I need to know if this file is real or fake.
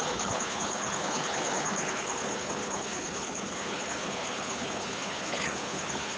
fake